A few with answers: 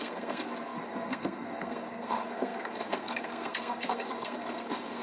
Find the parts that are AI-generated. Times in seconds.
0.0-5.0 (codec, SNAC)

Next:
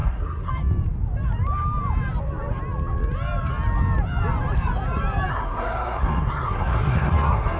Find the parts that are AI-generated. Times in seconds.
0.0-0.5 (codec, SNAC); 5.3-7.6

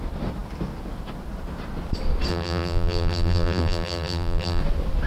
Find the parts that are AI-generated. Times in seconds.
2.3-4.6 (vocoder, BigVGAN v2)

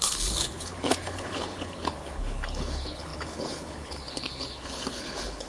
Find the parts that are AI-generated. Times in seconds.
0.0-5.5 (codec, HILCodec)

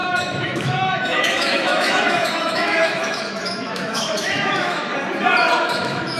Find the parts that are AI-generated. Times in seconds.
0.0-4.9 (autoencoder, DAC-VAE); 5.6-6.2

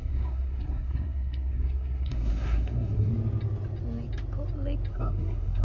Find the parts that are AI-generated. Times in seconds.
0.0-3.1 (codec, SNAC); 4.9-5.6